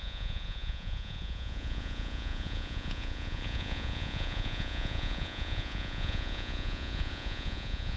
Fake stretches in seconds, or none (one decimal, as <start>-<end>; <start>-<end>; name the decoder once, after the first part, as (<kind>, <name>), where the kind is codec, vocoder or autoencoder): 0.0-8.0 (vocoder, Vocos)